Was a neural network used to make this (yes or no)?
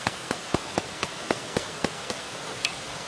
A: yes